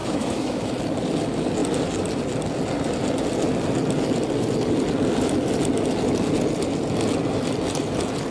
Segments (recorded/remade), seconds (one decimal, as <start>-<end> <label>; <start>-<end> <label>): 0.0-0.7 remade; 0.7-8.3 recorded